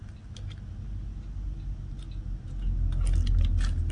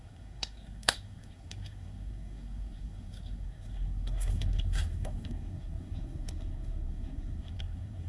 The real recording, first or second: first